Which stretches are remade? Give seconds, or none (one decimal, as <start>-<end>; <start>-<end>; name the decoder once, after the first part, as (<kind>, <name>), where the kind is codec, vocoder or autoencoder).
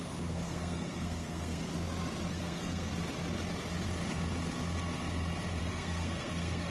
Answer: 0.0-1.7 (codec, SNAC); 2.3-2.9; 5.6-6.7